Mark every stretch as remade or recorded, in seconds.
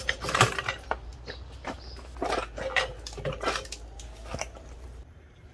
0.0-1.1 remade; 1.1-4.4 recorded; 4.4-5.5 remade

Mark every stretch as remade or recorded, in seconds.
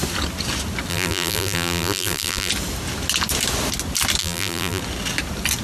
0.0-0.9 recorded; 0.9-2.5 remade; 2.5-4.2 recorded; 4.2-4.8 remade; 4.8-5.6 recorded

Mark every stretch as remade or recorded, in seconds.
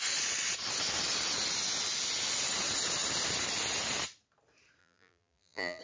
0.0-4.8 recorded; 4.8-5.8 remade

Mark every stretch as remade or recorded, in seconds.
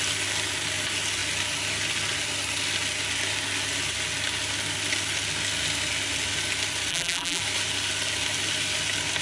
0.0-6.9 recorded; 6.9-7.4 remade; 7.4-9.2 recorded